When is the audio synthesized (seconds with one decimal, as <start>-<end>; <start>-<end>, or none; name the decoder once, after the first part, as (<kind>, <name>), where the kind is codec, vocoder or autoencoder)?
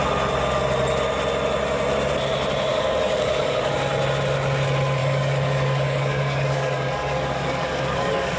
2.7-3.7 (codec, DAC); 5.0-8.4